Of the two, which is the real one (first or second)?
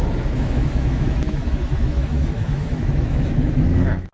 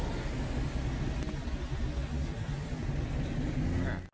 second